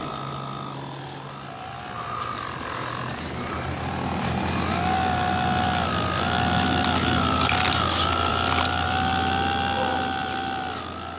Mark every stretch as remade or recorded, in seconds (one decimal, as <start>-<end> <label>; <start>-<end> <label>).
0.0-11.2 recorded